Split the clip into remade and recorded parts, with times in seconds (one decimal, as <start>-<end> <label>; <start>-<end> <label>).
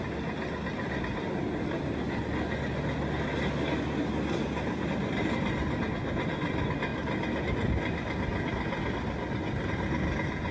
0.0-10.5 recorded